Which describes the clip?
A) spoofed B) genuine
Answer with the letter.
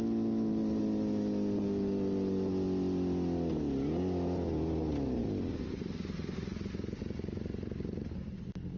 B